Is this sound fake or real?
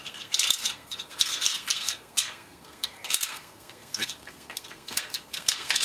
fake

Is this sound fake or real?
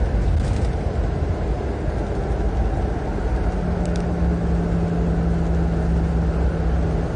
real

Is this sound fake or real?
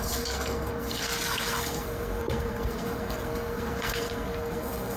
fake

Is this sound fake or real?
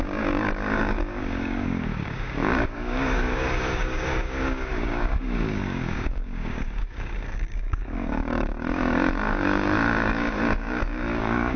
fake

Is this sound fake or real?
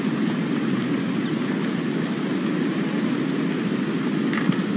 real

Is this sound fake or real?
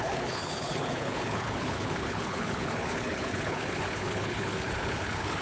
fake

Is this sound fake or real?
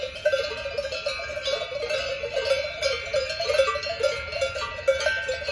real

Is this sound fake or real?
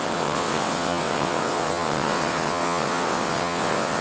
fake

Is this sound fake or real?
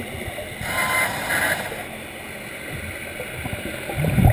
fake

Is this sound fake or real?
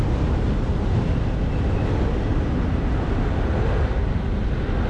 real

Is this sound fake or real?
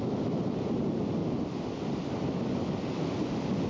real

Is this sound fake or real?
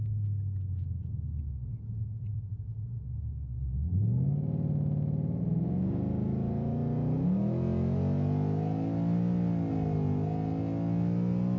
real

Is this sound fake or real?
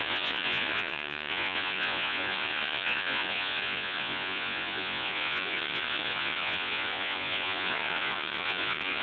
fake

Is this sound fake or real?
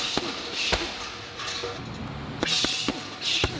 real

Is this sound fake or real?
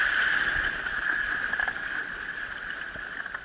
real